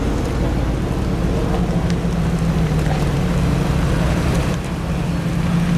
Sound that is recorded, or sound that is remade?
recorded